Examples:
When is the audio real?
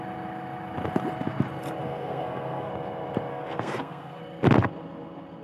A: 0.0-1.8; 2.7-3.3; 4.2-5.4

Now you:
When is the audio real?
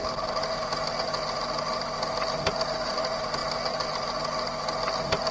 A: 0.0-5.3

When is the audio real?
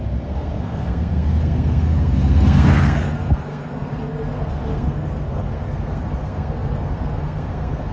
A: none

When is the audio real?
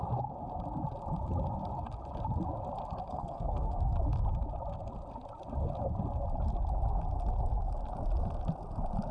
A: 0.0-3.1; 4.0-9.1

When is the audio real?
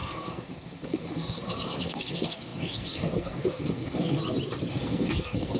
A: 4.2-4.7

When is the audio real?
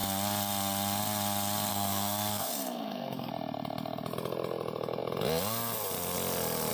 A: 0.0-1.7; 3.3-6.7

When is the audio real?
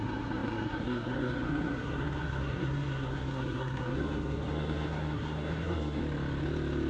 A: 6.0-6.9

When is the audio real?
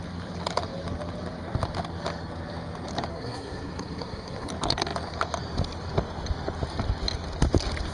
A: 0.0-3.1; 4.5-7.9